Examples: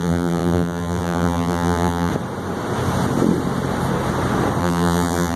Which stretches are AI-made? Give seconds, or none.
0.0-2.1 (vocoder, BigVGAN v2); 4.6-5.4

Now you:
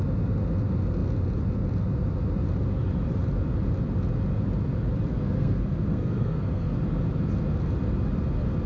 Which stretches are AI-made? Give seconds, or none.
5.1-6.8 (codec, SNAC)

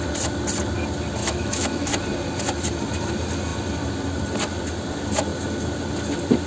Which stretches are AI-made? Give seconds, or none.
1.2-1.9 (autoencoder, DAC-VAE)